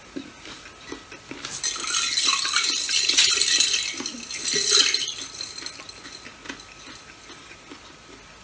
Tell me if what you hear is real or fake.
real